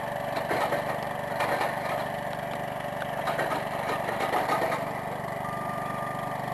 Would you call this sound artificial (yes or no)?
no